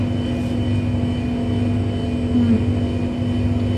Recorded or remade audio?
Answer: recorded